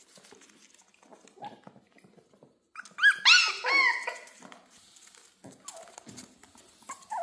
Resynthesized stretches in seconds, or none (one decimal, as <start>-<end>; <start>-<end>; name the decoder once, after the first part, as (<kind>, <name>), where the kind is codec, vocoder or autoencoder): none

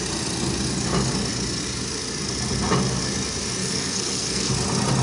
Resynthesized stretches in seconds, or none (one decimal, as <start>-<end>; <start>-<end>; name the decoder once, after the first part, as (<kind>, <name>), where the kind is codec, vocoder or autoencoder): 3.6-4.5 (codec, SNAC)

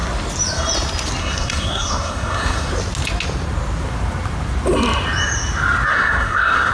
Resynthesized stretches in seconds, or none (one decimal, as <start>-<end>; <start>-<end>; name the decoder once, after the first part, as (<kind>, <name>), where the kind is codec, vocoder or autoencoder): 1.2-2.7 (codec, SNAC); 5.9-6.7

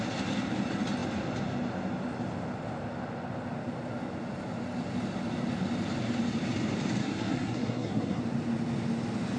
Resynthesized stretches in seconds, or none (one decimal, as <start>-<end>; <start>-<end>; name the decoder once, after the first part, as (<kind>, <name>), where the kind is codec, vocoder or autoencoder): 7.0-8.2 (codec, SNAC)